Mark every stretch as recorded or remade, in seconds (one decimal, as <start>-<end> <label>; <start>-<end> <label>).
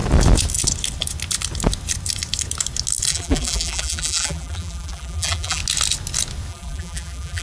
0.0-3.1 recorded; 3.1-5.6 remade; 5.6-6.5 recorded; 6.5-7.4 remade